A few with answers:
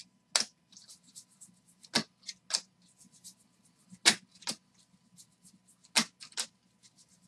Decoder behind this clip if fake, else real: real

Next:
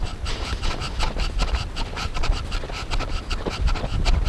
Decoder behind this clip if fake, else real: real